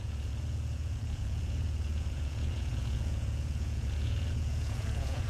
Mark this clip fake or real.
fake